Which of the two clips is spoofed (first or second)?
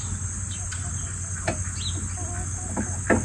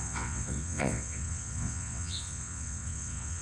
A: second